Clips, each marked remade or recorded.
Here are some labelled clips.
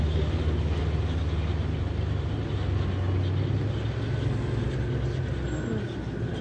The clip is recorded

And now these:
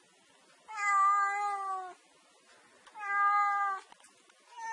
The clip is recorded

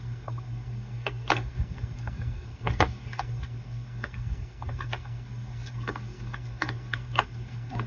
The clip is remade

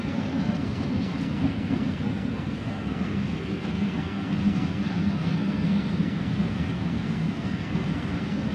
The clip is remade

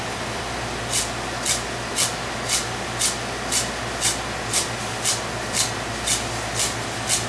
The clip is recorded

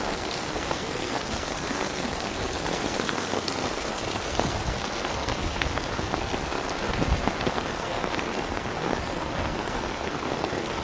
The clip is remade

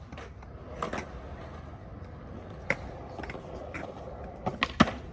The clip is recorded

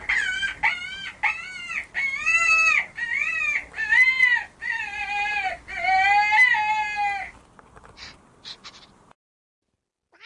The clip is recorded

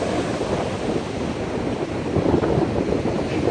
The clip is recorded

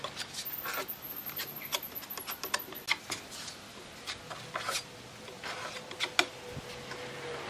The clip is recorded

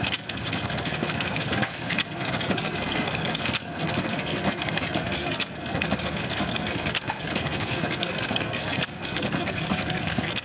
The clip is remade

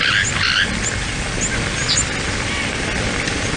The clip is recorded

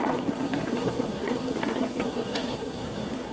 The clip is remade